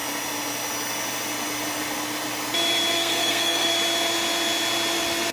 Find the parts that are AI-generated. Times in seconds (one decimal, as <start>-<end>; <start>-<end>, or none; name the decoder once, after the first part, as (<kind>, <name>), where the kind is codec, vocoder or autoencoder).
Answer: 2.9-3.7 (codec, SNAC)